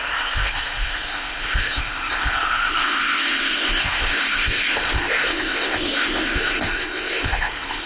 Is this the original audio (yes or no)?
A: no